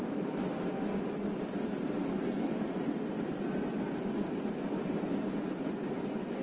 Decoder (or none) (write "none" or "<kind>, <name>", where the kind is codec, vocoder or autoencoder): none